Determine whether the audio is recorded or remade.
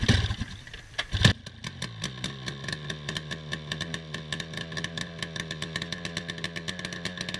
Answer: recorded